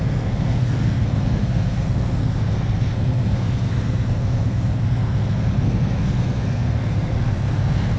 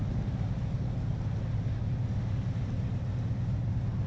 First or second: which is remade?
first